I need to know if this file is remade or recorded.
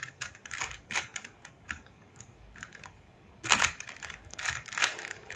remade